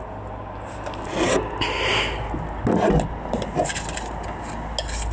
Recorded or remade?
recorded